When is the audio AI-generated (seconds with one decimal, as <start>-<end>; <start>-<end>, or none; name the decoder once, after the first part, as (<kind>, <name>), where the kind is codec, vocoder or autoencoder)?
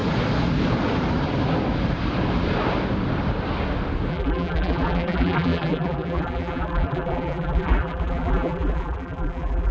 4.1-9.7 (vocoder, BigVGAN v2)